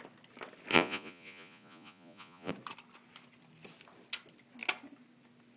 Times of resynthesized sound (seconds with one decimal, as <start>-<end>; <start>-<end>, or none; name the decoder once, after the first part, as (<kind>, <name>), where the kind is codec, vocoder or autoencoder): 0.7-2.5 (vocoder, Vocos)